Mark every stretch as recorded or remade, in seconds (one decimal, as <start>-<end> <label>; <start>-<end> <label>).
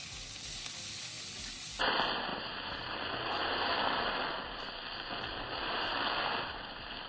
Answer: 0.0-7.1 recorded